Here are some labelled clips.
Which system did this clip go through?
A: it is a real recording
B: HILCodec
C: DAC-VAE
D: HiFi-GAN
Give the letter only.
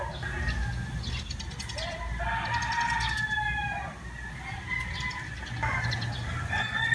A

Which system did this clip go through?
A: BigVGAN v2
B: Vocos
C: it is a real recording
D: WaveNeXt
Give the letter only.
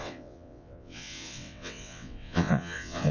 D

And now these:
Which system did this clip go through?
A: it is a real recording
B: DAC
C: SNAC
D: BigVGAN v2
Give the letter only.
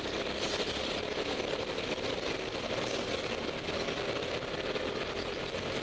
A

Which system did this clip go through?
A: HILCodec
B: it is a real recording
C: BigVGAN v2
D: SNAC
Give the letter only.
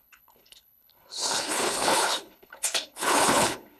A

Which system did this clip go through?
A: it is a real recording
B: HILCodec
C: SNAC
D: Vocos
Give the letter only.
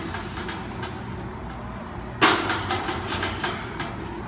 A